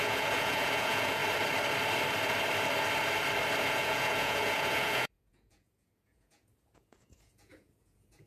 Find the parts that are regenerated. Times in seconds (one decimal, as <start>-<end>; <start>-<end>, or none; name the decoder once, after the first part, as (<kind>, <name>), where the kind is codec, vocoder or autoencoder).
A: 0.0-1.2 (vocoder, Vocos); 3.6-8.3